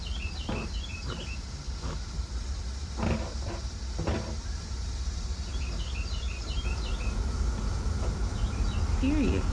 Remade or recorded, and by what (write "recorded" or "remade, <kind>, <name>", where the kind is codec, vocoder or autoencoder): recorded